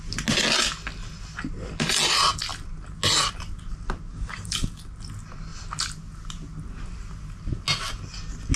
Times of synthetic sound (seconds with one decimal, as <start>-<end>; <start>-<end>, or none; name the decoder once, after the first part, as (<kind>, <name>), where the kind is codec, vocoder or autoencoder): 4.1-4.8 (codec, DAC)